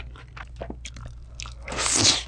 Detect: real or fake real